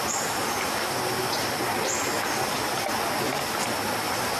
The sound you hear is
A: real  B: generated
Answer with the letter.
A